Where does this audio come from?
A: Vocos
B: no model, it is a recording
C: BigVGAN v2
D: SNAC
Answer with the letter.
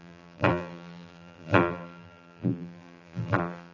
C